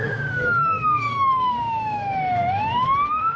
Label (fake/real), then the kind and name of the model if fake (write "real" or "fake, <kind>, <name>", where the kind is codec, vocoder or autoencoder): fake, autoencoder, DAC-VAE